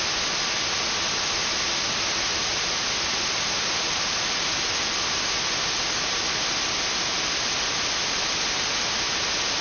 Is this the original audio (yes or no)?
yes